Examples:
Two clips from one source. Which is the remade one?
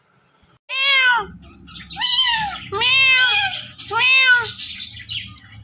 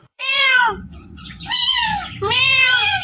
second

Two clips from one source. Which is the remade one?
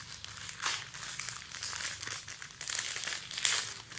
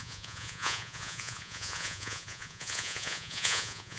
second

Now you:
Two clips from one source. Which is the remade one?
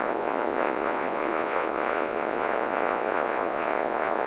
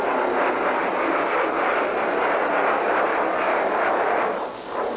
first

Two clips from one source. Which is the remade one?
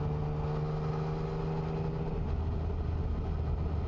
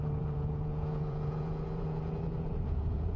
second